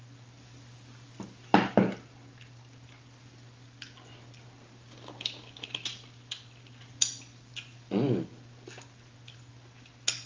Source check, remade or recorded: recorded